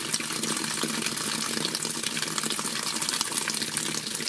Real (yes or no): yes